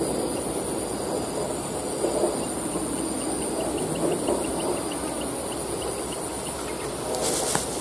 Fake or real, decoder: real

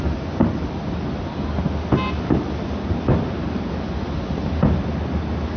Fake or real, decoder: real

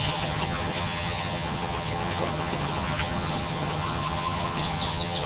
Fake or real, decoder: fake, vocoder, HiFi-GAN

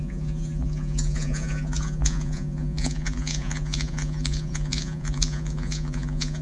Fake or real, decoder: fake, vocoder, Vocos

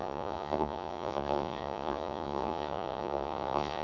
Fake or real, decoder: fake, vocoder, Vocos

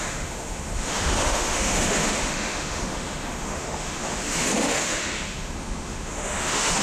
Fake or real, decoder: fake, autoencoder, DAC-VAE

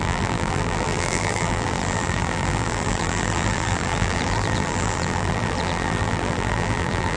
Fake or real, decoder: fake, vocoder, BigVGAN v2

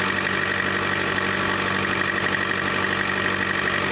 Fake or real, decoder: real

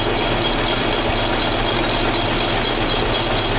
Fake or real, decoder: real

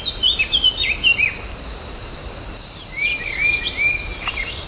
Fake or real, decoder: real